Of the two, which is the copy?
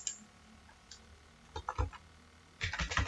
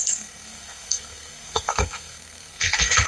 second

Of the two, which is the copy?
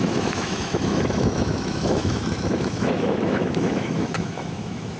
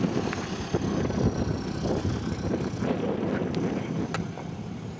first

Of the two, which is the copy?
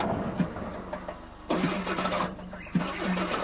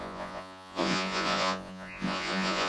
second